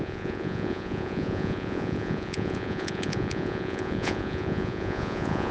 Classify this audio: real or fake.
fake